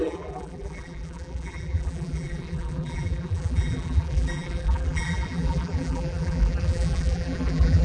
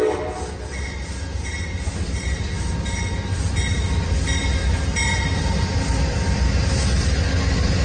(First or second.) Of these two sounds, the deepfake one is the first